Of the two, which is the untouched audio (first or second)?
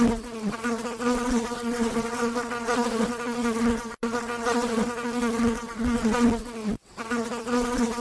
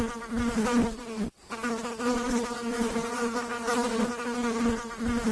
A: second